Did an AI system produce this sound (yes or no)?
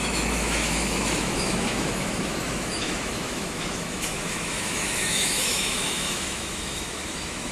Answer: yes